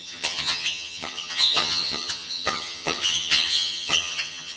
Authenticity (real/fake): fake